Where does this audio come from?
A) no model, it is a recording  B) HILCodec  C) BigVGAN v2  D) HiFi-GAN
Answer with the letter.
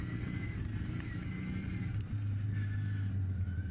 A